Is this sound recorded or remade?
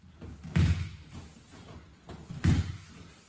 recorded